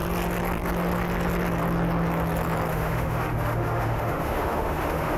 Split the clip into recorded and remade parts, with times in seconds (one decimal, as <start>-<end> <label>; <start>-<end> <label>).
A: 0.0-2.7 recorded; 2.7-5.2 remade